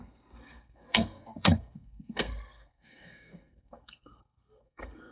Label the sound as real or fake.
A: fake